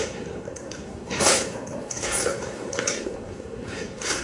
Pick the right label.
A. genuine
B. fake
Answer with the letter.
B